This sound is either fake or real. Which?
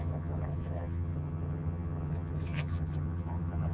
fake